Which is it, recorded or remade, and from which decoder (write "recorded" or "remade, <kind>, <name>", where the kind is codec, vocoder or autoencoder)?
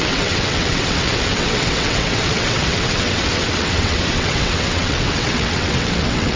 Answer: remade, vocoder, WaveNeXt